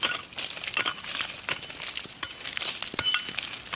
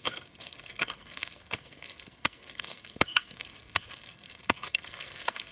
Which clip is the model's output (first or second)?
second